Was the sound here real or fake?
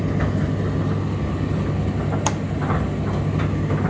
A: real